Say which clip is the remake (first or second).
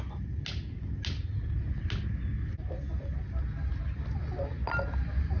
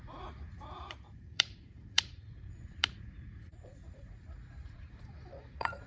second